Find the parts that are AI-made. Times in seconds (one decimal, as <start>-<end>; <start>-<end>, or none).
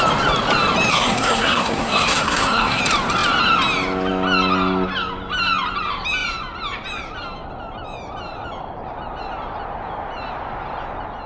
0.9-2.8